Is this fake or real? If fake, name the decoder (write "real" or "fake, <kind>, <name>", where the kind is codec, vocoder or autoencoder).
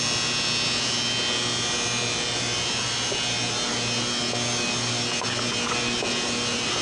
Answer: real